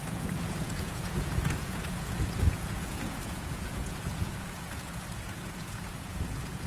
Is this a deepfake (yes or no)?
yes